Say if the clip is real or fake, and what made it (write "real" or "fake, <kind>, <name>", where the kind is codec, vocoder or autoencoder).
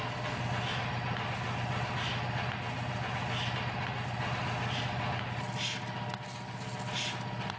real